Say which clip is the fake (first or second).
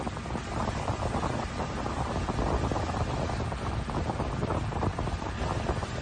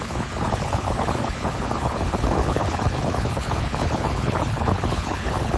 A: second